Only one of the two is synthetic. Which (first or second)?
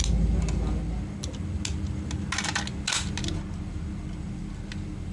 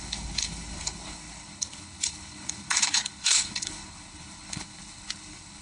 second